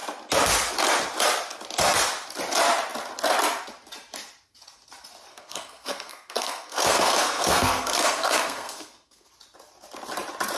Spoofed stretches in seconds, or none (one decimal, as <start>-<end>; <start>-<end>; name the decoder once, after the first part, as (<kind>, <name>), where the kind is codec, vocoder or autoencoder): 5.3-9.3 (codec, SNAC)